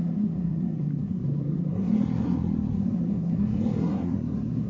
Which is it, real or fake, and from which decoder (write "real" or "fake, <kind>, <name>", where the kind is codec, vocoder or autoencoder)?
fake, codec, SNAC